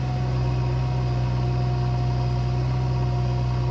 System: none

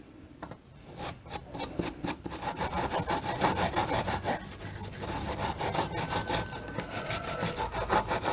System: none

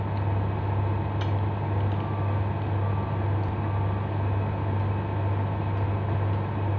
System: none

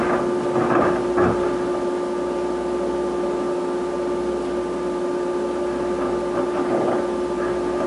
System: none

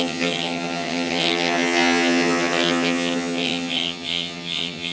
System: vocoder, HiFi-GAN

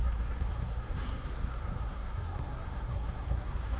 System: codec, SNAC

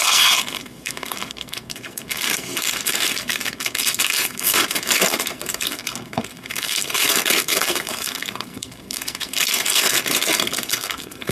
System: codec, SNAC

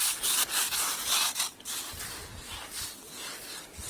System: none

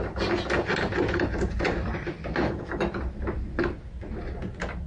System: none